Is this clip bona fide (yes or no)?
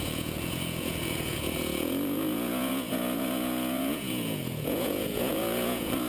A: no